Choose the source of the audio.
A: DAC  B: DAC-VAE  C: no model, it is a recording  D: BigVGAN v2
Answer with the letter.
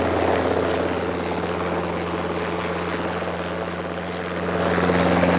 C